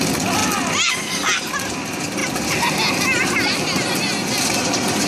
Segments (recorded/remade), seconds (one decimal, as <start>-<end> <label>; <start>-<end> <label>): 0.0-5.1 recorded